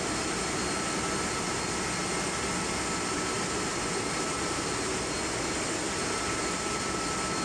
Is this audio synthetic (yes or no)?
no